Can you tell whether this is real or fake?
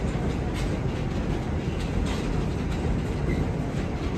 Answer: real